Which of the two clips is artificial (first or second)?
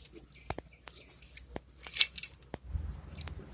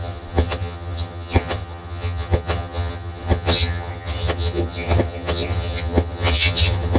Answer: second